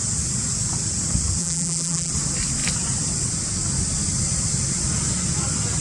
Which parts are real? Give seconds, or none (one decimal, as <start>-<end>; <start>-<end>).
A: 0.0-1.4; 2.1-5.8